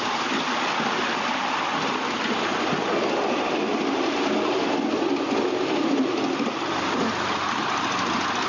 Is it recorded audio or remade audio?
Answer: recorded